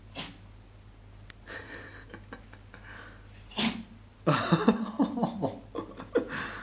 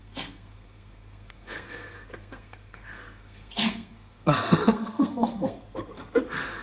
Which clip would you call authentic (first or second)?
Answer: first